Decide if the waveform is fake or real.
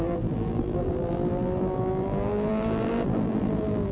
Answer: fake